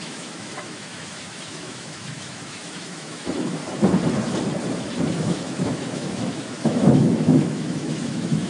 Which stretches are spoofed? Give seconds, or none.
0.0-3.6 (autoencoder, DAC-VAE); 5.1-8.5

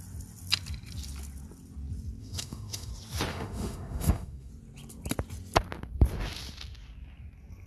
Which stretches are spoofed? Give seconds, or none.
2.2-2.9 (autoencoder, DAC-VAE); 3.3-4.5

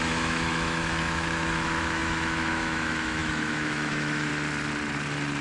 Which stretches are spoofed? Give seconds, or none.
0.0-4.3 (autoencoder, DAC-VAE)

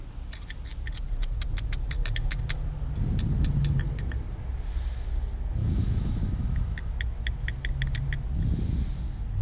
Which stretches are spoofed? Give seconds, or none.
5.6-6.9 (autoencoder, DAC-VAE)

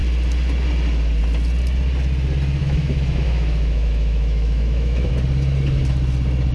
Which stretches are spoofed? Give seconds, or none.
2.6-5.1 (autoencoder, DAC-VAE)

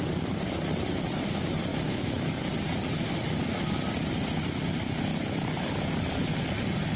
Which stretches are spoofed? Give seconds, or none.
1.7-2.4 (autoencoder, DAC-VAE)

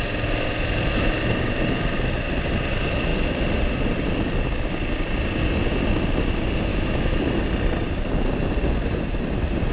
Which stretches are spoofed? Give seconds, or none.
6.7-7.4 (autoencoder, DAC-VAE)